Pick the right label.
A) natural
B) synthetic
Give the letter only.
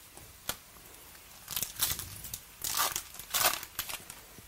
A